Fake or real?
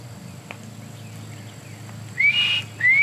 real